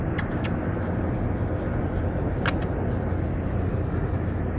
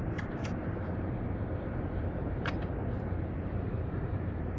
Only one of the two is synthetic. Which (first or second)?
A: second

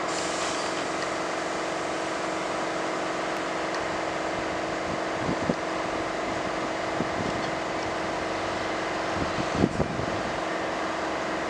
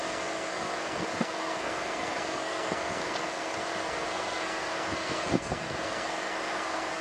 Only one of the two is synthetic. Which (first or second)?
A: second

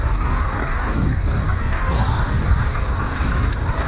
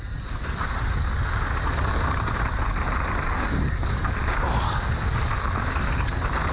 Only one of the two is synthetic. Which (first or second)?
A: first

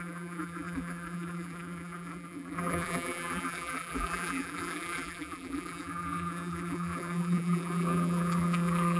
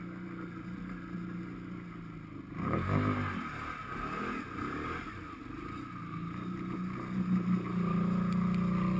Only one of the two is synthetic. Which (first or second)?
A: first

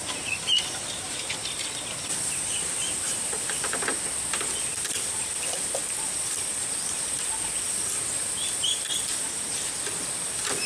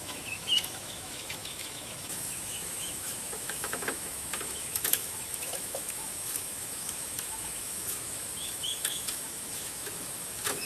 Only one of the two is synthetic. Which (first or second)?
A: second